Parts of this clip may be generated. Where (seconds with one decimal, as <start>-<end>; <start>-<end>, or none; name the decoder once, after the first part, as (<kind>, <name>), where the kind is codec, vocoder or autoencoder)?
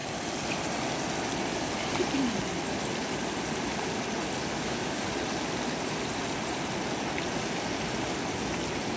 4.5-5.1 (codec, DAC)